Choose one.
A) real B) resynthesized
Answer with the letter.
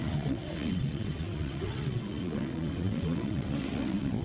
B